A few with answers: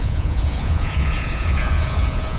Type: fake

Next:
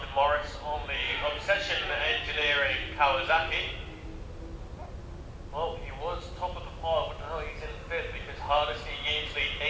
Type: real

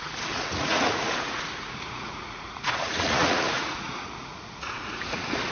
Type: fake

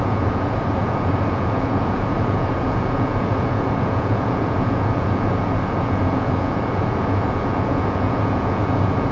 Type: fake